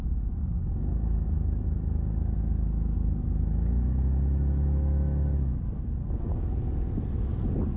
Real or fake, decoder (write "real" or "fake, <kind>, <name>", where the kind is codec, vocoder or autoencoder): fake, vocoder, BigVGAN v2